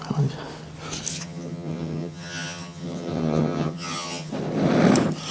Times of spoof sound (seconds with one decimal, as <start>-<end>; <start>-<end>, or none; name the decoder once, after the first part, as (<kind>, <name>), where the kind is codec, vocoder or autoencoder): 1.1-4.3 (vocoder, HiFi-GAN)